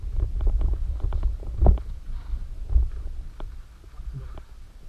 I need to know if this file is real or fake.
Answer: real